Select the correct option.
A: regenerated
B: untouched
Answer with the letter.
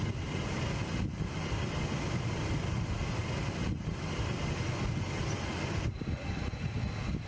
B